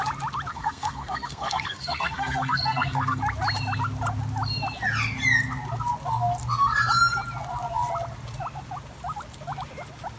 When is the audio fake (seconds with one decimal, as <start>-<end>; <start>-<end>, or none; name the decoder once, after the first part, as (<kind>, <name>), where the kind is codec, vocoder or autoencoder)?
0.5-3.2 (codec, SNAC)